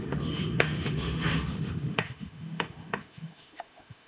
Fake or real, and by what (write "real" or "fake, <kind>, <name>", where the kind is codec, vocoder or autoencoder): fake, autoencoder, DAC-VAE